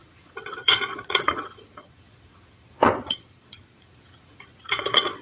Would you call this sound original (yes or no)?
no